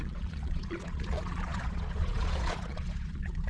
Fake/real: fake